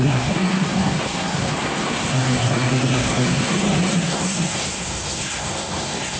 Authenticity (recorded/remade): remade